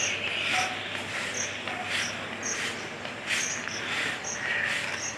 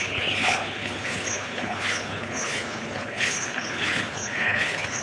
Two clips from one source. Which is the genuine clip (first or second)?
first